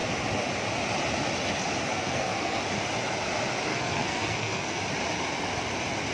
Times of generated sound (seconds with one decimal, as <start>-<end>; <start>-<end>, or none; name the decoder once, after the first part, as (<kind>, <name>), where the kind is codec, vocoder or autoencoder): 1.9-2.6 (codec, SNAC); 3.7-4.8